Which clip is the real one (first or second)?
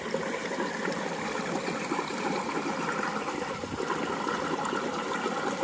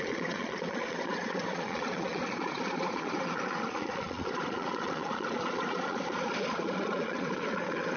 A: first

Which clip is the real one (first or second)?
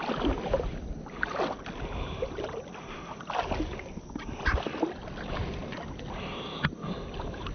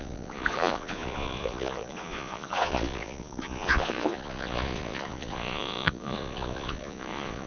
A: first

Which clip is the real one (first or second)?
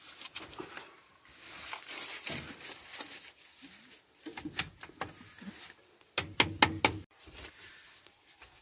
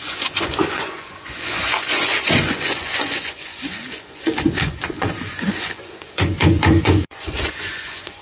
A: first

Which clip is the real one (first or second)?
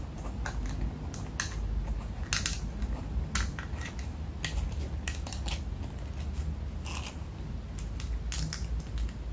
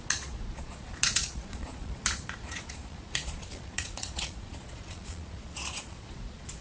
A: first